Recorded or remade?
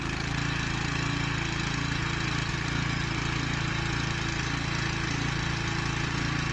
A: recorded